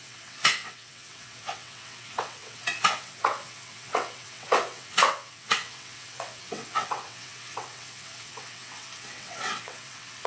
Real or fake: fake